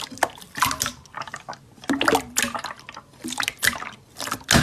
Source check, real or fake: real